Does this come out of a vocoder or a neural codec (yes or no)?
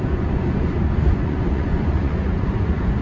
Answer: yes